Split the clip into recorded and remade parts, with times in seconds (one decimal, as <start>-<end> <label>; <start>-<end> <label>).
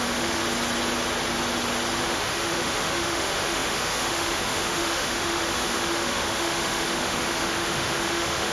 0.0-0.4 remade; 0.4-2.0 recorded; 2.0-8.5 remade